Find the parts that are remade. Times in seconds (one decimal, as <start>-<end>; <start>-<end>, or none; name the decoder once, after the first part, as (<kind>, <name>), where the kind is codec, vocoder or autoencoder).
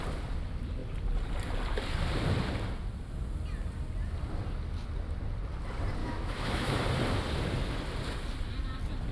6.0-6.8 (autoencoder, DAC-VAE)